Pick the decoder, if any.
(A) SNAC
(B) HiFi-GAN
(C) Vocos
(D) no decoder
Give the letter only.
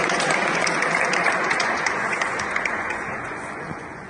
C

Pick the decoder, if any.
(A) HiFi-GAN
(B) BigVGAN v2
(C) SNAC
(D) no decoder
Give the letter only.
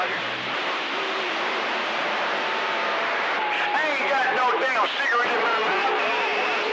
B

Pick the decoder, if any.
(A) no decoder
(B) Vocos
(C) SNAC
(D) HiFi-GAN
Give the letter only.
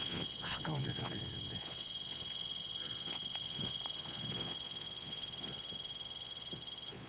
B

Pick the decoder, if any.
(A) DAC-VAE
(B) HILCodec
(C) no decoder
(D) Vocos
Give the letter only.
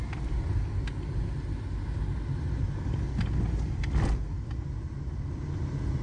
C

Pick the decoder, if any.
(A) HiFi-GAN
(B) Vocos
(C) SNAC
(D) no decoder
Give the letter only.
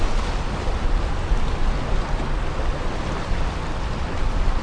D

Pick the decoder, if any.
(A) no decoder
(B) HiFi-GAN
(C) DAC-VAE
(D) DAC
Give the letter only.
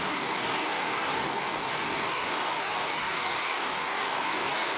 D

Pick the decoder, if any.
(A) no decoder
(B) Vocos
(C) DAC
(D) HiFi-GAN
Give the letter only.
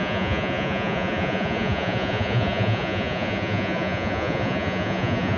B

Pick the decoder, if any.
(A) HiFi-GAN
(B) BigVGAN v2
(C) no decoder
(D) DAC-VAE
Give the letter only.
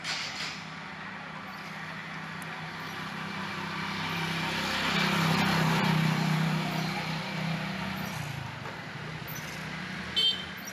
C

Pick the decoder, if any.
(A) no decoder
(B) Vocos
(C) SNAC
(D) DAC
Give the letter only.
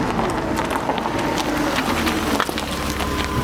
A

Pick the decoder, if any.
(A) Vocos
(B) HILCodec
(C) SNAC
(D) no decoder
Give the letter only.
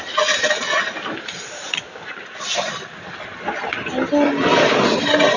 D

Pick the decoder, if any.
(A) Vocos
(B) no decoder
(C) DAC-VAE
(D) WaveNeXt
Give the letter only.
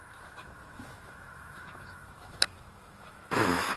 C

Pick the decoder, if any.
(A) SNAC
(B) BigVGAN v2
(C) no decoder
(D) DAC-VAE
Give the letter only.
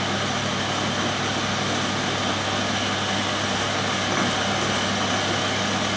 C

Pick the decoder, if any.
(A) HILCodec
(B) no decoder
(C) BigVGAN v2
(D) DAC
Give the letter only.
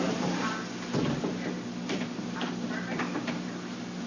B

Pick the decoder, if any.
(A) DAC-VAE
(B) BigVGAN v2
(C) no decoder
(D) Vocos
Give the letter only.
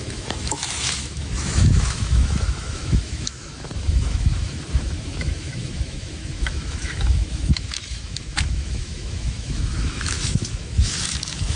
A